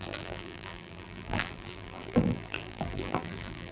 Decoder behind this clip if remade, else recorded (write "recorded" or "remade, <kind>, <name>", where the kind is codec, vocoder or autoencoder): remade, vocoder, BigVGAN v2